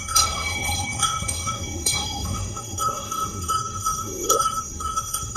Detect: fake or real fake